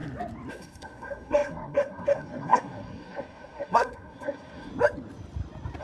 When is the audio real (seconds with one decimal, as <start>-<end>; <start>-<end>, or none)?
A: 0.0-0.5; 4.7-5.8

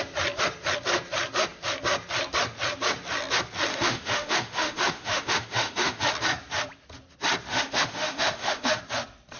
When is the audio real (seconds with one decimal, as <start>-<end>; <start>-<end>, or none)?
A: 0.0-3.7; 6.0-7.5; 8.8-9.4

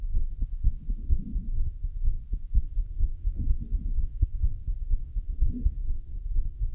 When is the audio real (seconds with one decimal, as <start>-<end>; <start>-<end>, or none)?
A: 0.4-1.0; 2.2-2.7

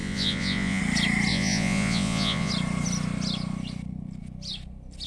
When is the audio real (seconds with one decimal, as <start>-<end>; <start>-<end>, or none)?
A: 0.8-1.3; 2.5-5.1